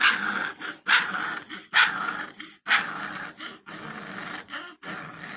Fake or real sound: real